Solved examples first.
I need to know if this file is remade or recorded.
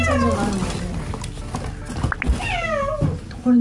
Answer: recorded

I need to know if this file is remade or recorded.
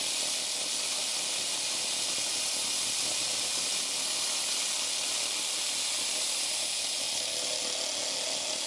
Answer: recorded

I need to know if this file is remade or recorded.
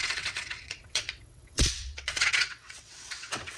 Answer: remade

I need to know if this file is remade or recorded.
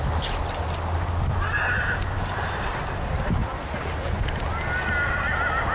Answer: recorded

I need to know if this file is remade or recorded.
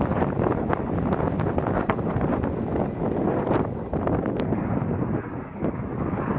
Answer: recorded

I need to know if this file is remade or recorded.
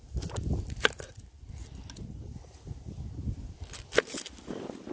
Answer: recorded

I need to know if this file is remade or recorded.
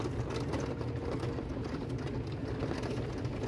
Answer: recorded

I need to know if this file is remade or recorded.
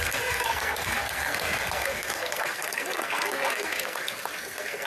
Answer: remade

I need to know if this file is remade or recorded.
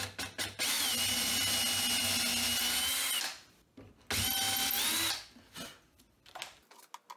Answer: recorded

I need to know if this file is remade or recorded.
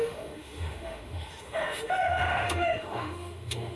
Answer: remade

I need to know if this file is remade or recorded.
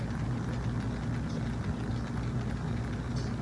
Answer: recorded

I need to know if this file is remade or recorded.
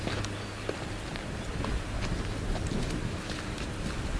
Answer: recorded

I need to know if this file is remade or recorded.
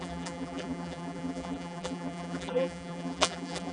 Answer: remade